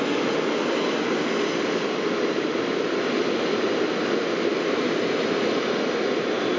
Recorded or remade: recorded